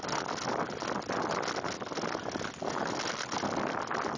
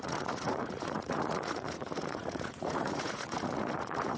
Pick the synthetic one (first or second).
second